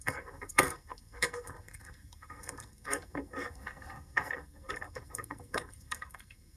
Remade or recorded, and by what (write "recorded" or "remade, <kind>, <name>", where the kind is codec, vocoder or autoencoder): remade, codec, SNAC